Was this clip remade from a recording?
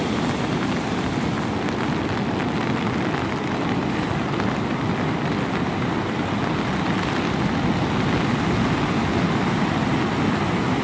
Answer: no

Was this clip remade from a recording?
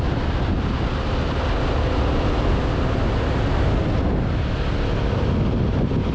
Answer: no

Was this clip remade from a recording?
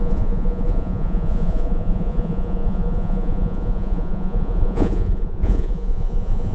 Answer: yes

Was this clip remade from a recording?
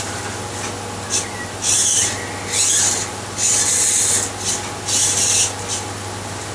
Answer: no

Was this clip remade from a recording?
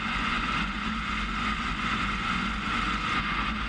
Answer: yes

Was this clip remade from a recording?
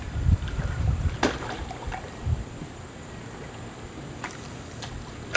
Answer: no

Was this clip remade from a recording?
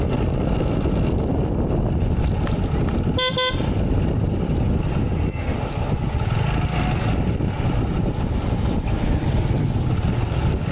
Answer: no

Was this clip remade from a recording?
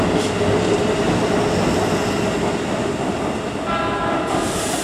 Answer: no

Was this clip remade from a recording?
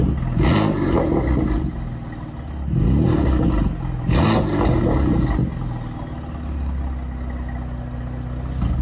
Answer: no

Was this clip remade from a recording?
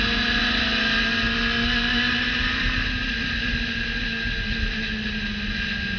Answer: no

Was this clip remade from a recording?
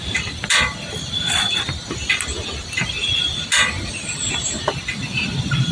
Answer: no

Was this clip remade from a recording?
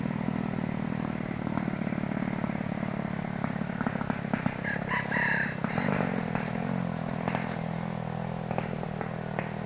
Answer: no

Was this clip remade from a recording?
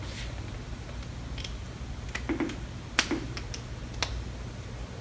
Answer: no